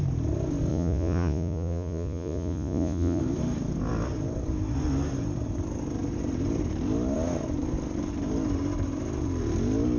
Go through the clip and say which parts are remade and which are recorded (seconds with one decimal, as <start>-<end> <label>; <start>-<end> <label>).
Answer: 0.0-0.7 recorded; 0.7-3.2 remade; 3.2-10.0 recorded